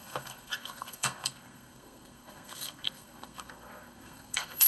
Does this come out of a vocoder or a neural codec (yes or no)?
yes